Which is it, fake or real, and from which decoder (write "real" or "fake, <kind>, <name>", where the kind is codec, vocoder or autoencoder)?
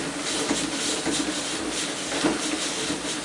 real